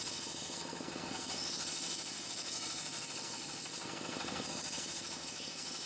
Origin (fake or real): fake